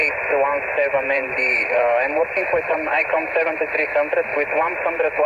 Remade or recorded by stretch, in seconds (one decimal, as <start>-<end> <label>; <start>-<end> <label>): 0.0-0.5 recorded; 0.5-3.7 remade; 3.7-4.3 recorded; 4.3-5.3 remade